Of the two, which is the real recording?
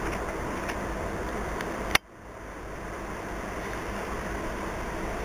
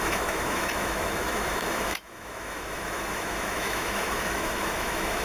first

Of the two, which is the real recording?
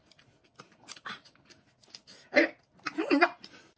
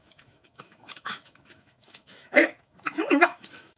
first